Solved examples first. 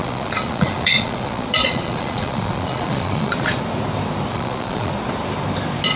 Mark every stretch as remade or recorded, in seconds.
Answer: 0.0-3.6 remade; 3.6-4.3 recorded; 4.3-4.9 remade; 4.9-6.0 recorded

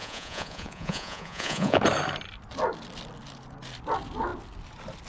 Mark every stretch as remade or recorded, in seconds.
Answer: 0.0-1.8 remade; 1.8-5.1 recorded

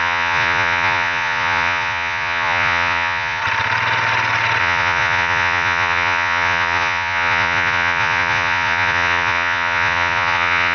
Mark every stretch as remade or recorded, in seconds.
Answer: 0.0-3.4 remade; 3.4-4.6 recorded; 4.6-10.7 remade

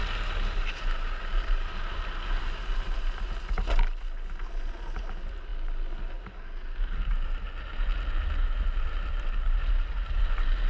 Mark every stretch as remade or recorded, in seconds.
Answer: 0.0-10.7 recorded

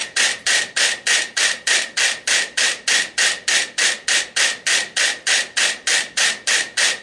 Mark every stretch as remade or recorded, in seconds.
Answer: 0.0-7.0 recorded

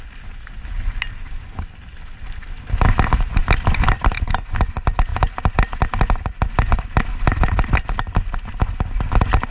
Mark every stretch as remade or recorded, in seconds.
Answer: 0.0-9.5 recorded